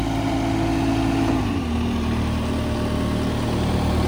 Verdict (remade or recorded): recorded